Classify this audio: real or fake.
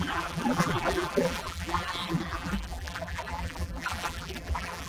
fake